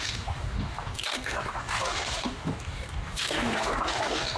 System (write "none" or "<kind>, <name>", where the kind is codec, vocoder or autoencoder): codec, DAC